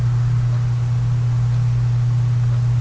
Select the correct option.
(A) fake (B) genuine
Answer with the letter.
B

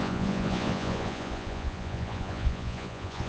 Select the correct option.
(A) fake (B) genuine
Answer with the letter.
A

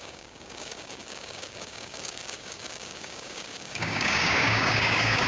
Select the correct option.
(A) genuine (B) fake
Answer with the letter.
B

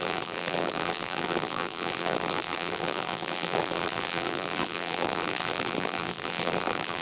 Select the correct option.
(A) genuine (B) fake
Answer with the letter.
B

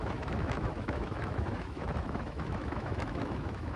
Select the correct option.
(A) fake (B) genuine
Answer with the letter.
A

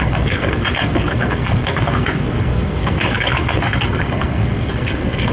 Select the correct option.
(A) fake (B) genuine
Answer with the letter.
A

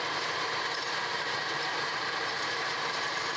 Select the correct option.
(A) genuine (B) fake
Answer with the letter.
B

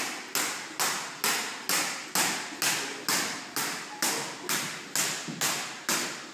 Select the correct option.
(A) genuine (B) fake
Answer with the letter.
A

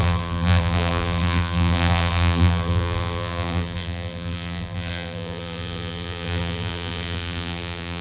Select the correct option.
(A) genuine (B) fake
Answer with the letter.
B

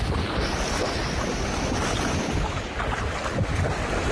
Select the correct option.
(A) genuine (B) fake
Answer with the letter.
A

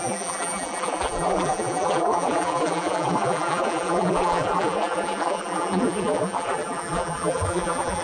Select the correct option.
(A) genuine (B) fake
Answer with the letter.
B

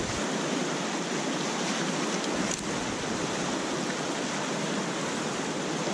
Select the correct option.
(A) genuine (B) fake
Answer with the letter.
A